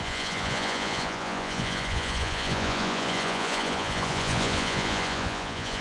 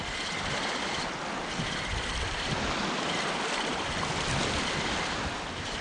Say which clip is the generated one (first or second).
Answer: first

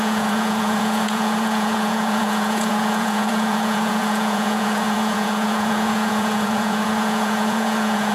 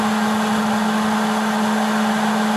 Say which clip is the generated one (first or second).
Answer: first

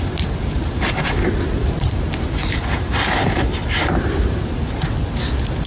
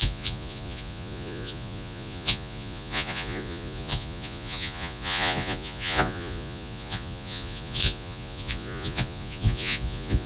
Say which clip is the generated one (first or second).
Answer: second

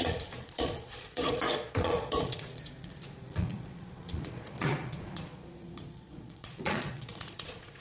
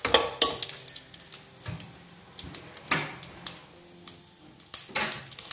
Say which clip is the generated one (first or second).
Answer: first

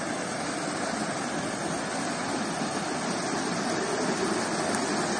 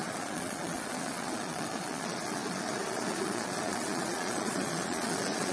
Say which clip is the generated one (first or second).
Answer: second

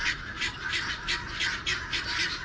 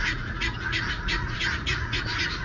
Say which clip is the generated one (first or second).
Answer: second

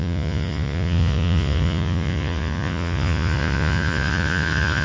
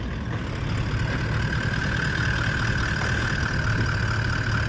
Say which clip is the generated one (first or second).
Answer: first